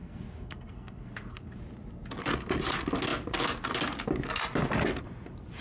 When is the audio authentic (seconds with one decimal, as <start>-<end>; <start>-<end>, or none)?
1.6-5.6